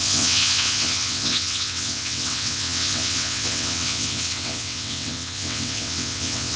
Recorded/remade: remade